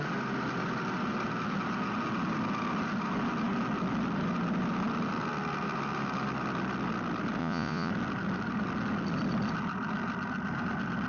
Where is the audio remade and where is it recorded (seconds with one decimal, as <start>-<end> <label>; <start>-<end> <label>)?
0.0-7.4 recorded; 7.4-7.9 remade; 7.9-11.1 recorded

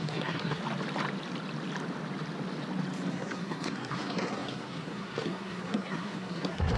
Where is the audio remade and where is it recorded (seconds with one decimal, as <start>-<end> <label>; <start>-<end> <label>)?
0.0-0.6 remade; 0.6-3.1 recorded; 3.1-6.8 remade

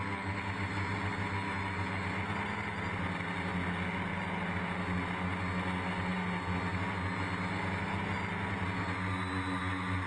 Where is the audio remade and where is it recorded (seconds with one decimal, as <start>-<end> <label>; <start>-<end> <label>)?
0.0-10.1 recorded

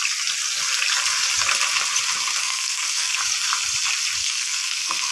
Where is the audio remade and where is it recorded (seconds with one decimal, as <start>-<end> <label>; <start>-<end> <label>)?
0.0-2.4 recorded; 2.4-3.2 remade; 3.2-4.2 recorded; 4.2-5.1 remade

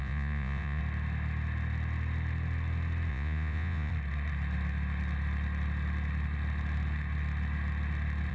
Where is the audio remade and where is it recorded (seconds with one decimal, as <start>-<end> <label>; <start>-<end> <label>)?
0.0-0.8 remade; 0.8-3.1 recorded; 3.1-3.9 remade; 3.9-8.3 recorded